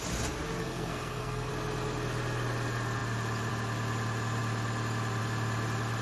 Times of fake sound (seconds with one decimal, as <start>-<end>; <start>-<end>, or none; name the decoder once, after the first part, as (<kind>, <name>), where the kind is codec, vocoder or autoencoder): 0.6-1.5 (codec, SNAC)

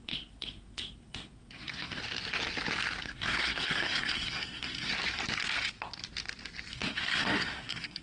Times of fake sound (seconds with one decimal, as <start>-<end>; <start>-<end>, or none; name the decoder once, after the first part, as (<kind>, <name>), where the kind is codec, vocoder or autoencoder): 0.0-2.0 (codec, SNAC); 3.0-4.9; 6.7-8.0

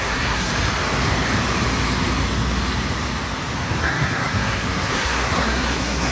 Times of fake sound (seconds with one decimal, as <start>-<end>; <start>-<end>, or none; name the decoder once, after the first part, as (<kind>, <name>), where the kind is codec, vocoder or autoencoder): 0.0-0.5 (codec, SNAC); 3.8-6.1

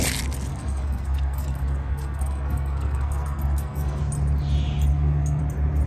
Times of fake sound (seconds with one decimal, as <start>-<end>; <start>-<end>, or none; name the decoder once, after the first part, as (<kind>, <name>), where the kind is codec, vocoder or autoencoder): 0.5-4.0 (codec, SNAC); 4.9-5.4

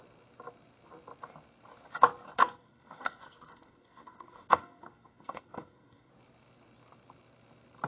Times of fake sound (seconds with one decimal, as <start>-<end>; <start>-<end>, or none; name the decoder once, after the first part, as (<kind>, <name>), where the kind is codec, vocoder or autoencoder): 2.4-6.1 (codec, SNAC)

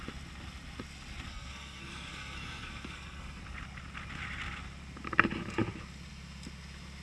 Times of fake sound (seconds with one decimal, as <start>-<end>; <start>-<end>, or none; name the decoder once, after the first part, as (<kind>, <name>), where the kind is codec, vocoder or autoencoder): 1.3-3.4 (codec, SNAC)

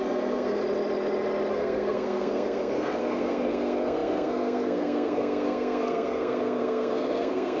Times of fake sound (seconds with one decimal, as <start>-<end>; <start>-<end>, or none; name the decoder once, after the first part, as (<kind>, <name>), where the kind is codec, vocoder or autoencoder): 0.0-0.6 (codec, SNAC); 1.5-7.6